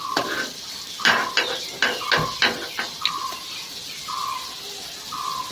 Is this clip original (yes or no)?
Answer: yes